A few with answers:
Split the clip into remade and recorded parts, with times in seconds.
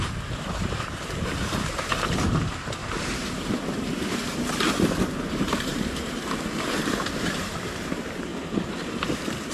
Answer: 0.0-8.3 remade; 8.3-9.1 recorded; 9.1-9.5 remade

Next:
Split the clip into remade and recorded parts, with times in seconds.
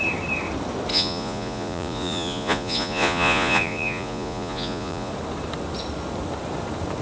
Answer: 0.0-0.9 recorded; 0.9-5.1 remade; 5.1-7.0 recorded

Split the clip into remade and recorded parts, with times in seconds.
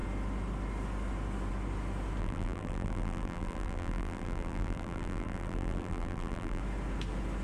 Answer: 0.0-2.2 recorded; 2.2-6.6 remade; 6.6-7.4 recorded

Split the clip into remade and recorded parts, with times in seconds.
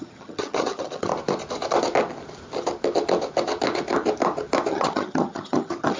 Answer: 0.0-1.1 remade; 1.1-4.7 recorded; 4.7-6.0 remade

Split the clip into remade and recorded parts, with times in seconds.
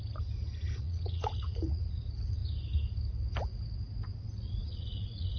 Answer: 0.0-0.8 recorded; 0.8-1.9 remade; 1.9-4.6 recorded; 4.6-5.4 remade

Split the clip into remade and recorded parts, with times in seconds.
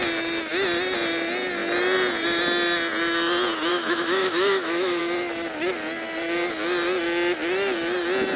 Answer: 0.0-3.7 recorded; 3.7-5.0 remade; 5.0-8.4 recorded